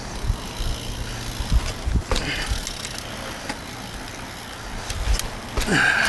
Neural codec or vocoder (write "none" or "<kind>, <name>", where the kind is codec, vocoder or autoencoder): none